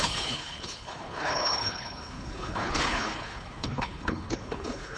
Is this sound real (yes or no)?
no